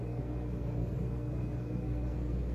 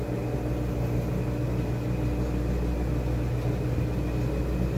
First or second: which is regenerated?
first